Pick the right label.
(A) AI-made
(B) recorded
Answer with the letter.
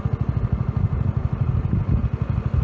B